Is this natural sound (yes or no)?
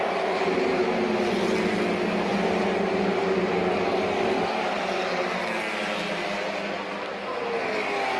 yes